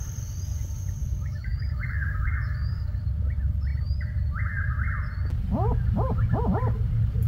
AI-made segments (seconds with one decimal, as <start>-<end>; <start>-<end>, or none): 1.0-3.0